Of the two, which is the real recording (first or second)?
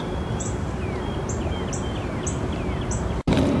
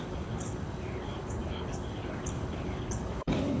first